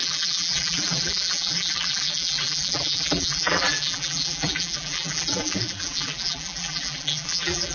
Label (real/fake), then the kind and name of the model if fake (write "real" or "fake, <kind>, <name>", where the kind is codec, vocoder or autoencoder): fake, vocoder, BigVGAN v2